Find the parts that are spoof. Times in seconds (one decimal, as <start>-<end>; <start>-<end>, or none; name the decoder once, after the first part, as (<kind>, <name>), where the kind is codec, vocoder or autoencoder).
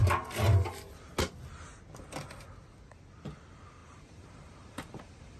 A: 3.8-5.4 (vocoder, BigVGAN v2)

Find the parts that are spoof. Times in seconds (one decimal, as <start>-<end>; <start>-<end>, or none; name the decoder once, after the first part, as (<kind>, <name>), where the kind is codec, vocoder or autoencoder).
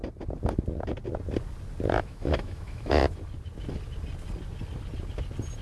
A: 2.0-3.0 (autoencoder, DAC-VAE)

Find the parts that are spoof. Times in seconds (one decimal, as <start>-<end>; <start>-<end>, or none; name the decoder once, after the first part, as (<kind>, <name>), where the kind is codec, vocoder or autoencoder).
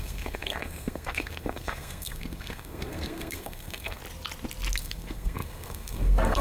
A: 0.0-4.0 (codec, SNAC); 4.8-6.4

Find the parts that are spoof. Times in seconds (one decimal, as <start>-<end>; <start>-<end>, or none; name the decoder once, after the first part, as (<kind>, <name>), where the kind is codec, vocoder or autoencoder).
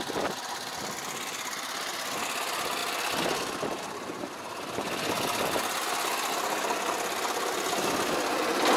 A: none